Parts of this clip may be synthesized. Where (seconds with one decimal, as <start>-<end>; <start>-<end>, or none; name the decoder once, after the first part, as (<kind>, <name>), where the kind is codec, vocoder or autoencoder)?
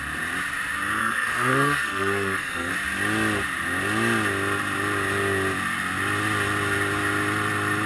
1.0-2.7 (codec, SNAC)